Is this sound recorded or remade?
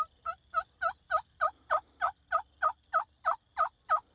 recorded